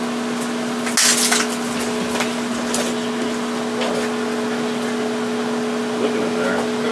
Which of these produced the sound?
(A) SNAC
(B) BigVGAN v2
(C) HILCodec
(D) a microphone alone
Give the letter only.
D